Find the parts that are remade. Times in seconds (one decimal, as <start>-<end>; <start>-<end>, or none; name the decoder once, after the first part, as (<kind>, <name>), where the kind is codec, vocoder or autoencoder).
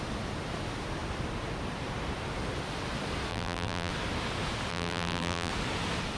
3.3-3.9 (vocoder, BigVGAN v2); 4.7-5.5